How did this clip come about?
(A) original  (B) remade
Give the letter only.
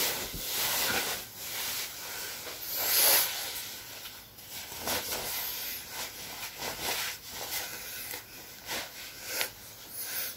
A